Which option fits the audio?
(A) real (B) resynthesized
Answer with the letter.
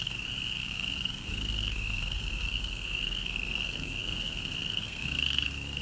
B